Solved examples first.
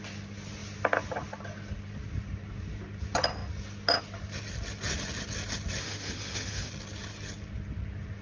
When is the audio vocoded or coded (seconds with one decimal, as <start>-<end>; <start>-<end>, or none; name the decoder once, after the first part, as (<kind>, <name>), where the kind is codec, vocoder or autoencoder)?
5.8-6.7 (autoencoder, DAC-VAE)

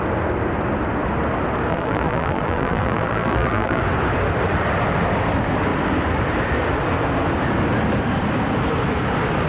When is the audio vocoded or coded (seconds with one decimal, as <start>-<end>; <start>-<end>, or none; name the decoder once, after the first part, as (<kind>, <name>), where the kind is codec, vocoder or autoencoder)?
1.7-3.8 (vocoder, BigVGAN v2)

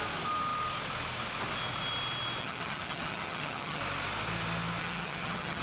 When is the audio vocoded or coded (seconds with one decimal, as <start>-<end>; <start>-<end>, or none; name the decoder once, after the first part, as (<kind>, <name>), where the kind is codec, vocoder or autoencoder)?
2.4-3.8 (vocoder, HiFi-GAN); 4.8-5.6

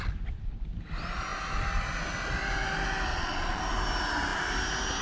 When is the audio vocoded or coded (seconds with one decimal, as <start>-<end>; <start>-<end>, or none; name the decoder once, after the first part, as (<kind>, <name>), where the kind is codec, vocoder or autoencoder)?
3.1-3.6 (vocoder, Vocos)